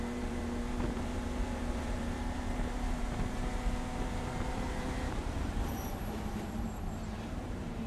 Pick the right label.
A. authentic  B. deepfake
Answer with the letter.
B